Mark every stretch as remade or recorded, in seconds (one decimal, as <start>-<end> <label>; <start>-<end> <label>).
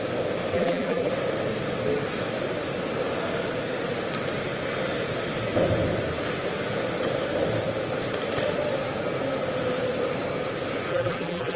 0.0-0.5 recorded; 0.5-1.1 remade; 1.1-10.9 recorded; 10.9-11.6 remade